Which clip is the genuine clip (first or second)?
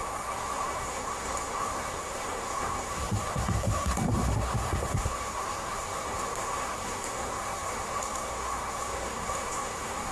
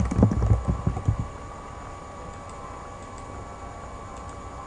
second